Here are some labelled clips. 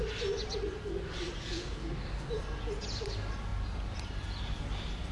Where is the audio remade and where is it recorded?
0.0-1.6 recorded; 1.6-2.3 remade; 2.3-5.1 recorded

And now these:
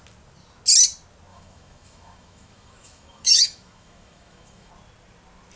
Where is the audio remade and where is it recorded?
0.0-1.3 recorded; 1.3-4.7 remade; 4.7-5.6 recorded

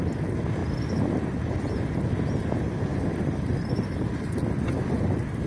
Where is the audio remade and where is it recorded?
0.0-2.9 recorded; 2.9-4.4 remade; 4.4-5.5 recorded